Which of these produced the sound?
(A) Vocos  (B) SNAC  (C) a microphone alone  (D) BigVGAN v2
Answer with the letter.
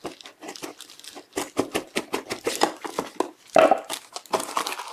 C